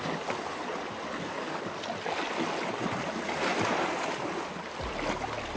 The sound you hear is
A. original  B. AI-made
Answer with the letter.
A